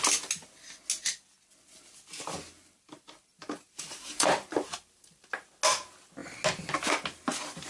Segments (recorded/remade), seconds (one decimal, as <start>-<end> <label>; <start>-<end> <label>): 0.0-2.6 recorded; 2.6-5.3 remade; 5.3-7.7 recorded